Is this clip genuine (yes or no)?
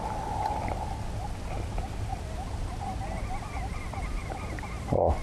yes